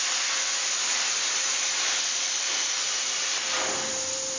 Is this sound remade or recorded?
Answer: remade